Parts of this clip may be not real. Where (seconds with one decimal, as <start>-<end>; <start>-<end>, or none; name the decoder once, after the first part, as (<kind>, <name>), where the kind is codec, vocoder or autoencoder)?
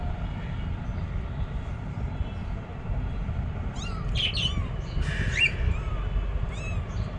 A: none